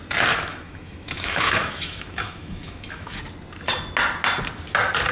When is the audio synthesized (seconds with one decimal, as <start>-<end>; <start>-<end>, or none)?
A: 0.5-3.2